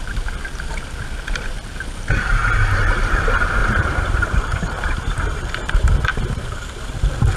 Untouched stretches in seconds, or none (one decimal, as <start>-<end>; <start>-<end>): 0.0-3.6; 6.9-7.4